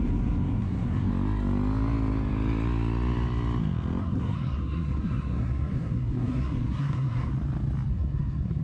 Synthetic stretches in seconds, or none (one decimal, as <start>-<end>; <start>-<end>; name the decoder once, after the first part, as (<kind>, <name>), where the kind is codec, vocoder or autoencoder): 0.0-1.1 (codec, SNAC); 4.0-7.3; 7.9-8.6